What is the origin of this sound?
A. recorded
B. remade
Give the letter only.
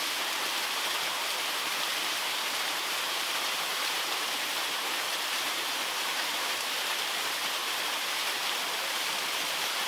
B